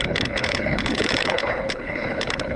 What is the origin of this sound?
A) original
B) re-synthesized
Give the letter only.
B